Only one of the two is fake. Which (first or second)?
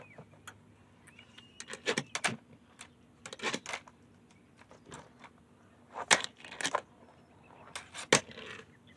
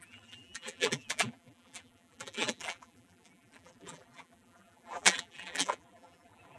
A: second